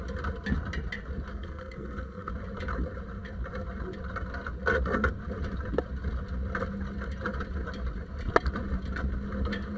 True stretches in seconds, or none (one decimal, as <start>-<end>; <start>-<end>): 0.0-1.3; 2.3-9.8